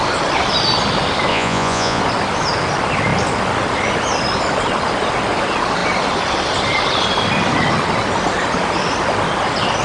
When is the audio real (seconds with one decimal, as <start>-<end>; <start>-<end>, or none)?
0.0-1.3; 2.0-9.8